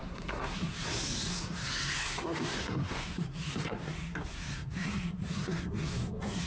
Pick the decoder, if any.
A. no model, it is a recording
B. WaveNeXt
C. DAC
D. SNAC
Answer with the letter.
D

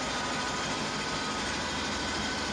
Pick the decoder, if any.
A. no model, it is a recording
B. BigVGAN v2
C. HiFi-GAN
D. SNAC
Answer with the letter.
A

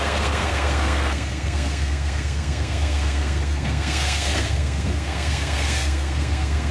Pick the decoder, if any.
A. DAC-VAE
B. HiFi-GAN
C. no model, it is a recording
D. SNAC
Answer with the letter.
D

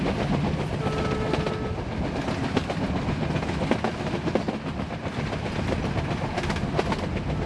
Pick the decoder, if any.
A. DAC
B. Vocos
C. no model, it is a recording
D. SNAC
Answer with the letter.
C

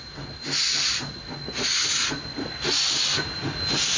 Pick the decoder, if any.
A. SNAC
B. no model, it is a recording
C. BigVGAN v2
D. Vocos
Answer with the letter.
B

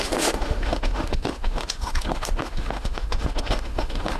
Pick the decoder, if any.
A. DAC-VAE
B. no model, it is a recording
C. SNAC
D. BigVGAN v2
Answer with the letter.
A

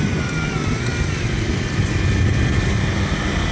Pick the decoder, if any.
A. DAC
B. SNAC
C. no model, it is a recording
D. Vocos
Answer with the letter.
C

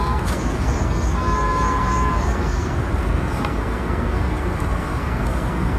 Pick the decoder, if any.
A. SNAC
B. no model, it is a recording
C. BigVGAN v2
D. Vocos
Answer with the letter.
A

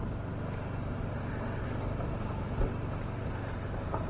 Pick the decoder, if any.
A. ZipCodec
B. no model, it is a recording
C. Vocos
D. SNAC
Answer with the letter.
B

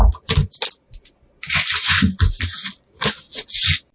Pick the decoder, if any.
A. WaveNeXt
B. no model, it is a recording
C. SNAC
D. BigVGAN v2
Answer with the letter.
B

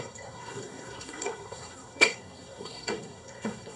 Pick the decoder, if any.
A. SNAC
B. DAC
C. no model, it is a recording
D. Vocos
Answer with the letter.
A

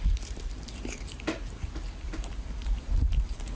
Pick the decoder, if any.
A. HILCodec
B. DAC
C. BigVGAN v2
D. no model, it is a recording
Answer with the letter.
C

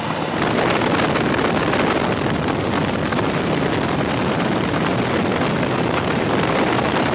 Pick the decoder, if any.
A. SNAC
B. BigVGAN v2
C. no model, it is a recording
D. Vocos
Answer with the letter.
B